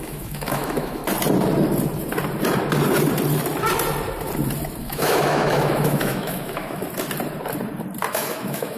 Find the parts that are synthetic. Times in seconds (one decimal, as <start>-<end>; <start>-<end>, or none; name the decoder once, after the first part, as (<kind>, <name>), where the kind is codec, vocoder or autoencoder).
0.0-1.0 (autoencoder, DAC-VAE); 4.8-6.8; 8.1-8.8